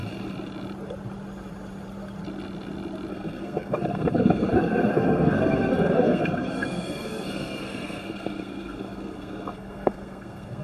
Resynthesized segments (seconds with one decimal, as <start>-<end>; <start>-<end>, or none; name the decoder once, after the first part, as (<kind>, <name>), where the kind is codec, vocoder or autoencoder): 3.1-10.6 (codec, SNAC)